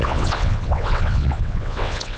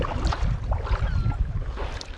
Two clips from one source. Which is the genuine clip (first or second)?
second